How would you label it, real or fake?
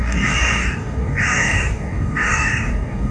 fake